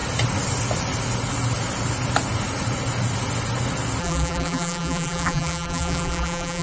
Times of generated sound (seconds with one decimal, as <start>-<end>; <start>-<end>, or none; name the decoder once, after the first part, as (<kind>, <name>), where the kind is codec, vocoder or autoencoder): 4.0-6.6 (vocoder, BigVGAN v2)